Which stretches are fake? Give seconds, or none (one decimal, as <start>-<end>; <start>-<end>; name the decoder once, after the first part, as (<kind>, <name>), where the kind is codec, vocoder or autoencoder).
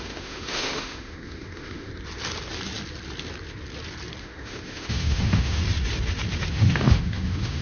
0.0-1.9 (autoencoder, DAC-VAE); 4.2-5.6; 6.5-7.6